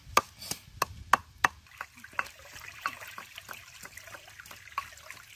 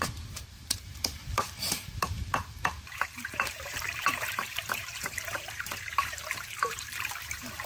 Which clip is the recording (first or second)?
first